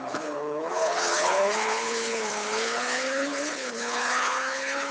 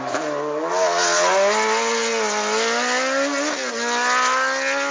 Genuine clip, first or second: second